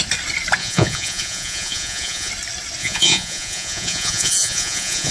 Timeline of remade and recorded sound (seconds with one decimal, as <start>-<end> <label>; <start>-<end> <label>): 0.0-0.6 recorded; 0.6-2.3 remade; 2.3-2.8 recorded; 2.8-5.1 remade